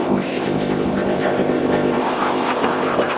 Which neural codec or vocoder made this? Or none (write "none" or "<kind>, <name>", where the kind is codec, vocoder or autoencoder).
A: codec, ZipCodec